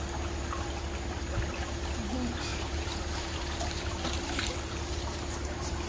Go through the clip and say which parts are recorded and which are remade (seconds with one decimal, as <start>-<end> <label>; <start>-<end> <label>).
0.0-2.5 recorded; 2.5-5.9 remade